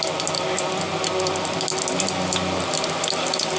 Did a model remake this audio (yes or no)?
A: no